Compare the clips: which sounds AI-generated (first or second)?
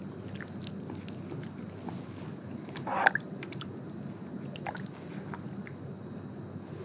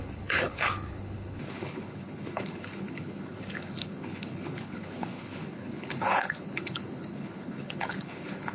second